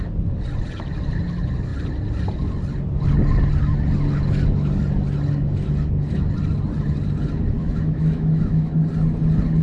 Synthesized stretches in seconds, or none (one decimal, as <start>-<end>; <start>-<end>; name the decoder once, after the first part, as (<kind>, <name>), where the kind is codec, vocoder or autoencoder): 7.6-8.7 (autoencoder, DAC-VAE)